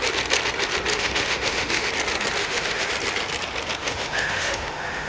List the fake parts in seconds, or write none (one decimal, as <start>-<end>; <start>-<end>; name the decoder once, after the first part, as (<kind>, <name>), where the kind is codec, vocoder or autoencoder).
0.9-1.9 (autoencoder, DAC-VAE); 2.4-2.9; 3.8-5.1